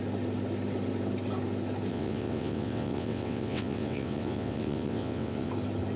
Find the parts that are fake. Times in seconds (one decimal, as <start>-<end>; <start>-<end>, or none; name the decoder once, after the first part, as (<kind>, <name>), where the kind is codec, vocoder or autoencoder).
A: 1.9-5.5 (vocoder, WaveNeXt)